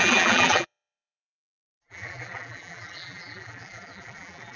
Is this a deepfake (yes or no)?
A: yes